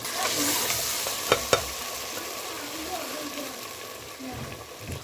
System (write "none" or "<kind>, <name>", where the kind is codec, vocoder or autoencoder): none